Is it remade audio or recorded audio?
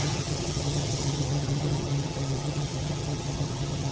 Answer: remade